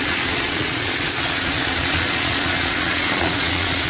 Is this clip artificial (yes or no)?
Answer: yes